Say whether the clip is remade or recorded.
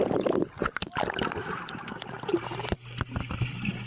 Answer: recorded